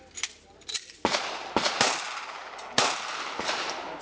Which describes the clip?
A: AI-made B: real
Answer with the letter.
B